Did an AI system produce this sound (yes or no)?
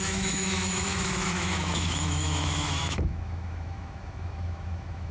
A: yes